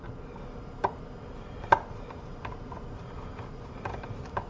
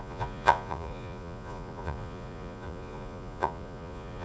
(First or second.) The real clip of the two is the first